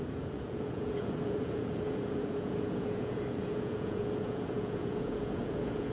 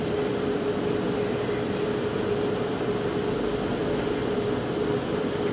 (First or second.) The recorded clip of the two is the second